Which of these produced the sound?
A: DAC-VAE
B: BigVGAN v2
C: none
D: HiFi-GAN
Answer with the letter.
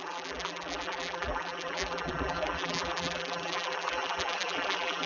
B